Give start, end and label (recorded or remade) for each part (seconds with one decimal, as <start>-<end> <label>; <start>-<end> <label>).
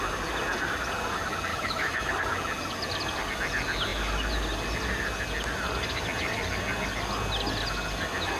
0.0-1.5 recorded; 1.5-2.1 remade; 2.1-8.4 recorded